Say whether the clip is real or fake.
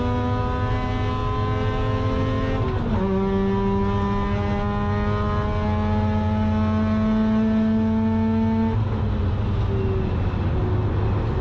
real